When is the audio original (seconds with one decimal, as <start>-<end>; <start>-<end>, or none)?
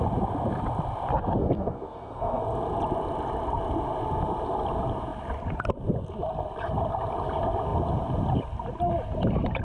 0.0-1.4; 2.4-9.6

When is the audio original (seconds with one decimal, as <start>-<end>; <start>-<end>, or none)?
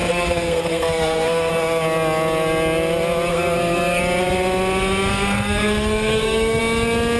1.5-3.3; 4.0-5.1; 6.6-7.2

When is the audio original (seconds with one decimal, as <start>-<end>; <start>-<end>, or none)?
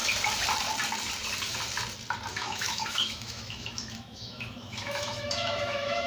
0.0-2.3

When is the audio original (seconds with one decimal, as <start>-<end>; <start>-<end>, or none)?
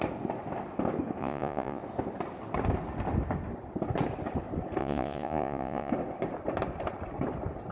0.0-1.2; 1.8-4.8; 5.9-7.7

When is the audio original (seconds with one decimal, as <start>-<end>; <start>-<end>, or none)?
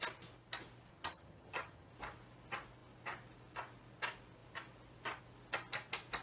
0.0-0.9; 1.9-6.2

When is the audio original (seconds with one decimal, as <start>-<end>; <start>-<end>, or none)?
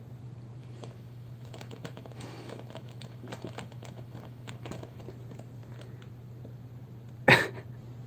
0.0-0.6; 5.0-8.1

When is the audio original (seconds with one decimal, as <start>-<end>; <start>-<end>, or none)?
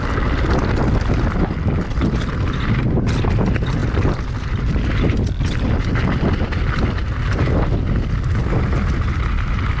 0.0-9.8